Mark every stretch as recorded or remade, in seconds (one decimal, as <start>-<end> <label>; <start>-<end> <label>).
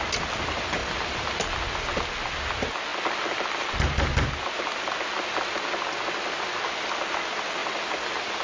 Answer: 0.0-8.4 recorded